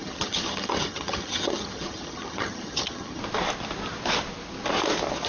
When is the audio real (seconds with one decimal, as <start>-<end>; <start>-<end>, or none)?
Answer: 3.2-5.3